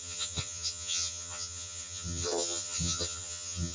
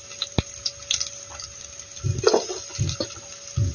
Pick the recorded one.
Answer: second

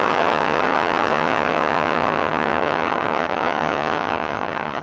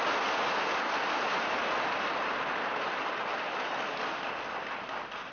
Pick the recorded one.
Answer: second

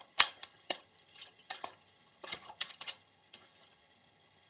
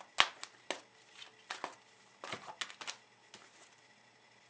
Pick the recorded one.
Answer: second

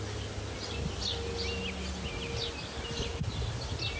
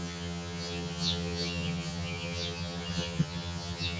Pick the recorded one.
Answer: first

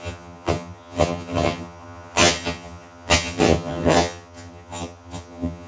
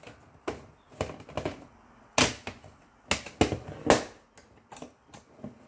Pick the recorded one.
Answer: second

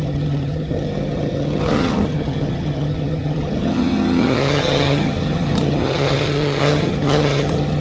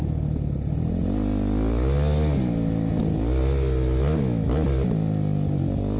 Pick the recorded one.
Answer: second